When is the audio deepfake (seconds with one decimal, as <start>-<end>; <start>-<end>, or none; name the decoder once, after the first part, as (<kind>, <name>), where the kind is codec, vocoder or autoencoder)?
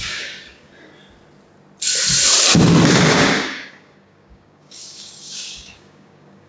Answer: 0.0-0.7 (codec, DAC); 3.1-6.5